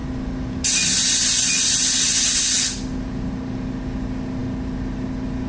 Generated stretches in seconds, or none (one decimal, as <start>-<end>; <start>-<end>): none

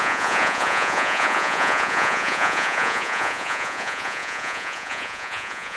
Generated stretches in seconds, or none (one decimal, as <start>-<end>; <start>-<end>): 0.0-5.8

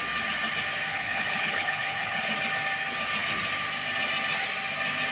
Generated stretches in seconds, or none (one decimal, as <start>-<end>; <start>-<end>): 0.9-2.3

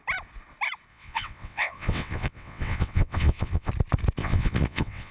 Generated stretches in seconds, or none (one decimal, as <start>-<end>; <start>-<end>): 0.9-3.7; 4.2-5.1

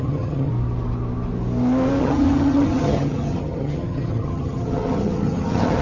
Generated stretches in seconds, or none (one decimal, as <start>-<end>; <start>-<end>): 0.0-0.5; 2.0-5.8

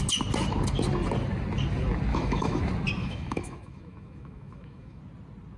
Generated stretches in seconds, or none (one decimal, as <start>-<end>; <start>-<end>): 2.1-2.6; 3.0-5.0

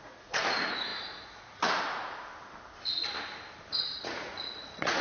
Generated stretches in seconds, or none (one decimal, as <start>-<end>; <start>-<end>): 0.0-2.3; 4.0-5.0